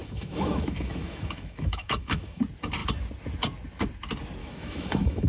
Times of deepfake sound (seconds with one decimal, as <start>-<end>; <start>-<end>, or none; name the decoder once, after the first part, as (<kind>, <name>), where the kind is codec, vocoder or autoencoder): 0.0-2.4 (autoencoder, DAC-VAE); 4.4-5.3